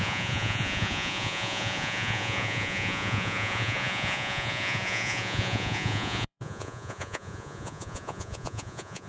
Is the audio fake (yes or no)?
yes